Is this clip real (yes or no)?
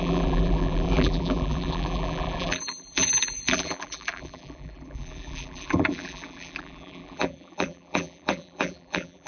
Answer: no